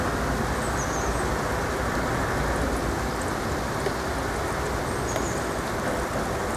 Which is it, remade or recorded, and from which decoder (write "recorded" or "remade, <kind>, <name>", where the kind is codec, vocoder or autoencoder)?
recorded